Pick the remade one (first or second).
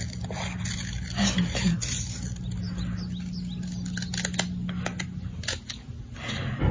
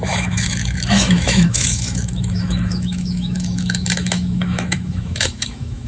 second